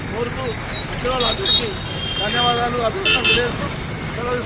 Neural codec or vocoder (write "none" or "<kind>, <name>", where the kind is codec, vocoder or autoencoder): none